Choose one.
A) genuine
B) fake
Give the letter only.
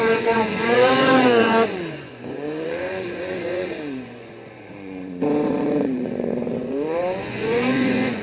B